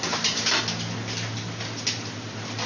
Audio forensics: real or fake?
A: real